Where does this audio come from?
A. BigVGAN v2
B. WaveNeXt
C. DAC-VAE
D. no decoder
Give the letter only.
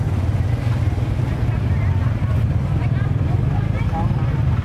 D